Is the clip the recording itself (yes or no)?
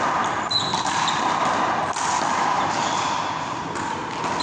yes